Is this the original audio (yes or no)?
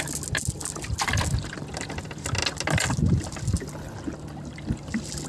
yes